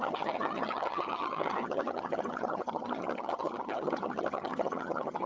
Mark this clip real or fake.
fake